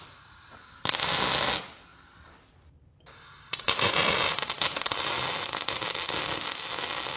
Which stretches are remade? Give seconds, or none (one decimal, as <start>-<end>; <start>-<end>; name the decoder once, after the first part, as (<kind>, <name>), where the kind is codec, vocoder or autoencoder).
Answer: none